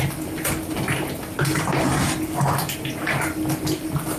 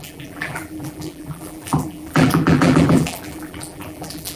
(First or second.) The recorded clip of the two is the first